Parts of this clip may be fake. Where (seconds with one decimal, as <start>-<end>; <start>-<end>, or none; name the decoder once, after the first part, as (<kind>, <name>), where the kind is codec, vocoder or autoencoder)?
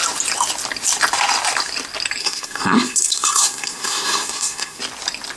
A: 2.2-4.8 (codec, SNAC)